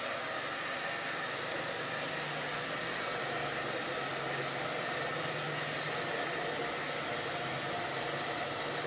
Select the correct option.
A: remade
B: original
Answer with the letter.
B